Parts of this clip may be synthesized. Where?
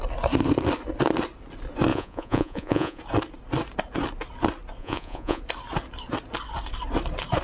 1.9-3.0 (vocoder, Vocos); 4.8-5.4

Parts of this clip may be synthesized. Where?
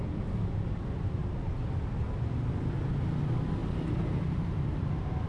3.6-5.3 (vocoder, BigVGAN v2)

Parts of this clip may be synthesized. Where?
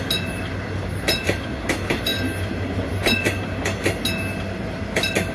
none